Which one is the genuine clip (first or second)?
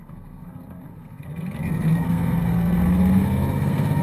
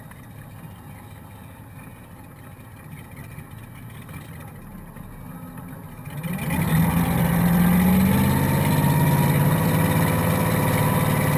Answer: second